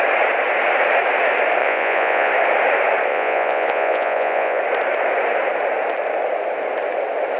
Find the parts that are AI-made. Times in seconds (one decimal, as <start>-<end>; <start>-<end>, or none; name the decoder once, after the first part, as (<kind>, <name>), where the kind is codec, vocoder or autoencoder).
1.6-2.3 (vocoder, Vocos); 3.1-4.6